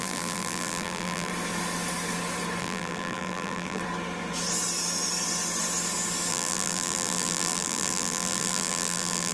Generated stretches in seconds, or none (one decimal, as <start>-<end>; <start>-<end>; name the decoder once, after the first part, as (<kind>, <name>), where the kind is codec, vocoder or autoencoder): 0.0-1.3 (vocoder, BigVGAN v2); 2.6-3.8; 6.3-9.3